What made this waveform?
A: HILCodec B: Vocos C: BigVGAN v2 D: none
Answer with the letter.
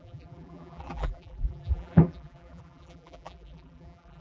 C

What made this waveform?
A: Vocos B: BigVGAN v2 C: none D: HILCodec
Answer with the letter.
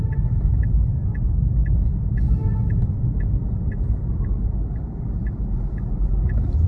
C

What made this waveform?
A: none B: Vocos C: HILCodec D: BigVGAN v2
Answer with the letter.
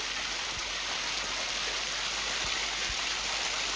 A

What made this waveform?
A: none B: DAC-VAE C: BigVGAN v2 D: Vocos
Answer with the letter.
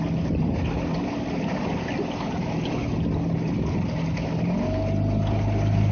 A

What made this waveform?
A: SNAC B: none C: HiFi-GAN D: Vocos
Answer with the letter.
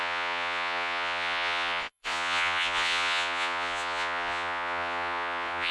D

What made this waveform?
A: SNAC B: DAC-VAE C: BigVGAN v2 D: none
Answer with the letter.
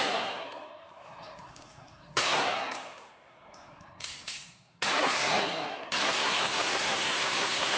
A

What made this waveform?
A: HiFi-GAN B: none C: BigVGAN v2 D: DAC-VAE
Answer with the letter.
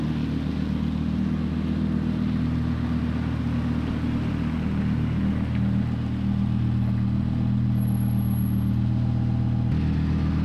B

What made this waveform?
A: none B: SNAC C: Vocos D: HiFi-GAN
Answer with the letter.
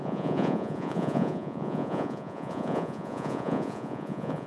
C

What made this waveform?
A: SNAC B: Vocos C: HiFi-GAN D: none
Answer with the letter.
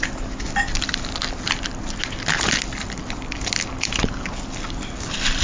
D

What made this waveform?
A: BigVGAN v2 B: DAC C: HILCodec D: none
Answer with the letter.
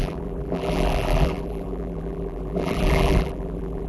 A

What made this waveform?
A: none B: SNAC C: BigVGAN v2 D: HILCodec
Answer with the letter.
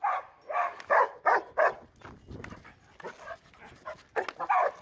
A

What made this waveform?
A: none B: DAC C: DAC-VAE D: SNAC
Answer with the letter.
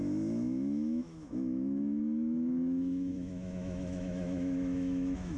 C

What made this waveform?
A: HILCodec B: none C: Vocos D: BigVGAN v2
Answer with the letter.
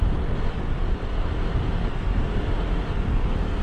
D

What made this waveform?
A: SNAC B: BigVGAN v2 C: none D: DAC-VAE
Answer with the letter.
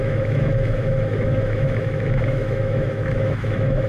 D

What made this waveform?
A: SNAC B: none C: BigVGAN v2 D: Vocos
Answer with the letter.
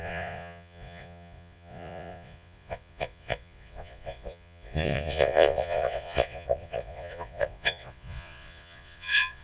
D